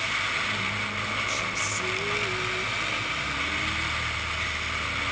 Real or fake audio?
real